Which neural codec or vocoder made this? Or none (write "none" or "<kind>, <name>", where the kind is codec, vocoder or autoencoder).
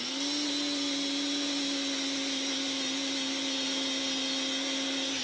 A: none